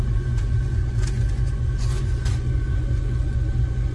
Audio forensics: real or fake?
fake